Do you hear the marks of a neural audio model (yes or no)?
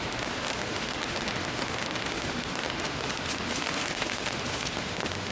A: yes